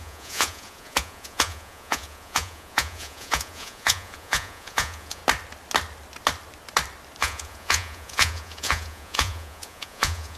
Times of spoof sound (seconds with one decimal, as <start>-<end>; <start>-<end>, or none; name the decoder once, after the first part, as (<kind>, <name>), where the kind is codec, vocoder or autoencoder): 0.0-5.2 (vocoder, Vocos); 7.2-10.4